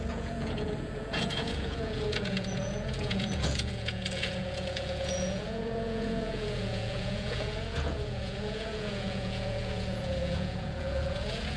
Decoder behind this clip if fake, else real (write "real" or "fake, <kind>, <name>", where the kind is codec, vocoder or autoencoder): fake, vocoder, Vocos